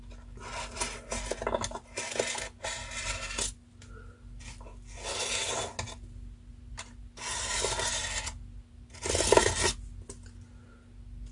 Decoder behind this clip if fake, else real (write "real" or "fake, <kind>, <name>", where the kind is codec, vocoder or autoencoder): real